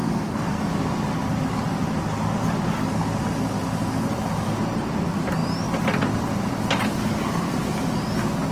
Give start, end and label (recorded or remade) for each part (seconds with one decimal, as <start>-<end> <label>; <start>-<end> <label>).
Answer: 0.0-0.6 remade; 0.6-8.5 recorded